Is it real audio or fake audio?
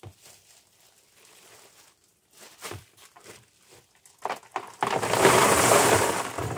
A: real